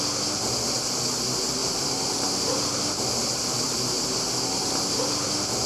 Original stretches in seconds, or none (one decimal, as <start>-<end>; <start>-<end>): 0.0-1.6; 5.0-5.7